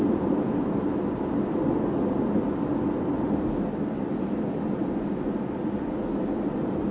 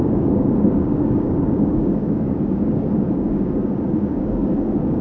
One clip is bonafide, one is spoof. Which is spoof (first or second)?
second